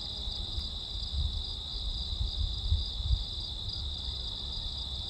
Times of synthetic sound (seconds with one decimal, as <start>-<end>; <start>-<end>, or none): none